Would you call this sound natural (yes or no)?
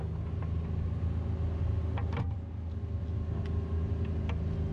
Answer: yes